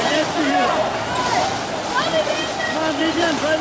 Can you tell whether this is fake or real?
fake